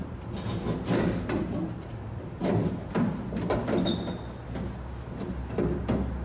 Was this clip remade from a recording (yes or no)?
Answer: no